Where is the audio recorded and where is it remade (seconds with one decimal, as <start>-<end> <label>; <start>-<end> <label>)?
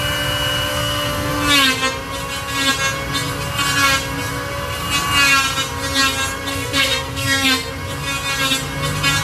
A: 0.0-0.7 recorded; 0.7-1.3 remade; 1.3-6.5 recorded; 6.5-7.7 remade; 7.7-9.2 recorded